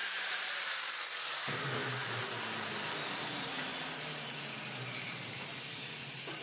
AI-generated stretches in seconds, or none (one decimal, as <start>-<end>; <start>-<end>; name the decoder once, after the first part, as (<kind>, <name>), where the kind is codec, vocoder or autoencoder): 0.0-0.7 (vocoder, BigVGAN v2); 1.8-2.7; 3.7-6.4